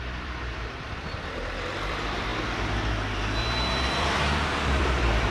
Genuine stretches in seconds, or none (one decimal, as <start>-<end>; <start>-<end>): 2.3-3.9